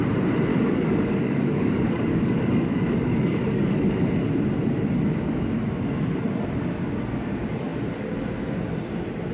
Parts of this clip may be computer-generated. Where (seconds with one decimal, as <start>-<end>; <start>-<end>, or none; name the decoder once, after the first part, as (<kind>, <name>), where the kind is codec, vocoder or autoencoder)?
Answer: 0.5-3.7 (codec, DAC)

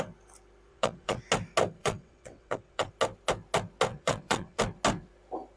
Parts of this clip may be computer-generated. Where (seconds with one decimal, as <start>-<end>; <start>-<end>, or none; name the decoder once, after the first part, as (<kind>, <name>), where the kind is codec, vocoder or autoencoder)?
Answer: 0.7-1.2 (vocoder, WaveNeXt); 1.8-2.9; 3.9-4.6

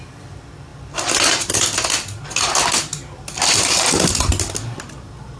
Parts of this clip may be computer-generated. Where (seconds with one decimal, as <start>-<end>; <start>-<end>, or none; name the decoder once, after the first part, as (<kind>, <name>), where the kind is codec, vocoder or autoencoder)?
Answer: none

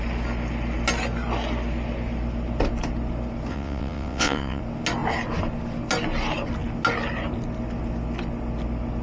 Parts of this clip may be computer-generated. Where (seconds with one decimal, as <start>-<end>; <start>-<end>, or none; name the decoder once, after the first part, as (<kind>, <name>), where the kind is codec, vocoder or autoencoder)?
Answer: 3.5-4.6 (vocoder, WaveNeXt)

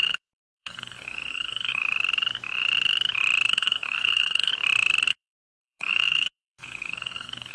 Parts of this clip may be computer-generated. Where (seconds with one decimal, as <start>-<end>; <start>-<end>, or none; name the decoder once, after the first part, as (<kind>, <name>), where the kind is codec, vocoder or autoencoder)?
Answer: 0.0-1.8 (codec, SNAC); 3.5-4.5; 5.1-7.5